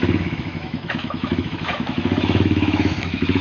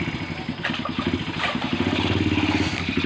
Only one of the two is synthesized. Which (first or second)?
first